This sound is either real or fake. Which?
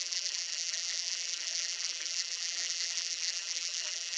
fake